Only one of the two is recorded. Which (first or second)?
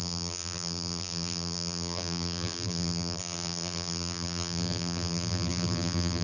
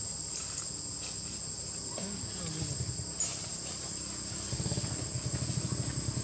second